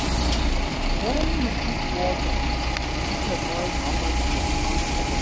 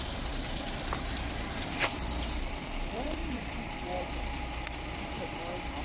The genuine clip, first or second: first